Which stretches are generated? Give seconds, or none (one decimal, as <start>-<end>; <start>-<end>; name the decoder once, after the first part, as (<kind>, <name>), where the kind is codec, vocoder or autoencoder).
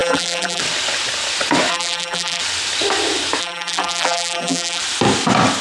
0.0-0.6 (vocoder, BigVGAN v2); 1.7-2.4; 3.4-4.8